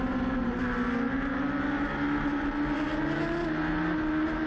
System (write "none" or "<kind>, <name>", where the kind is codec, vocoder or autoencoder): none